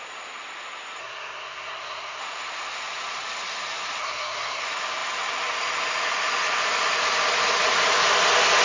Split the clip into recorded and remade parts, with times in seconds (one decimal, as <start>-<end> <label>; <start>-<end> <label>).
0.0-1.0 recorded; 1.0-2.2 remade; 2.2-4.0 recorded; 4.0-4.6 remade; 4.6-8.6 recorded